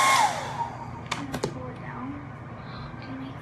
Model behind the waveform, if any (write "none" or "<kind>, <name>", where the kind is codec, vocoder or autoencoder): none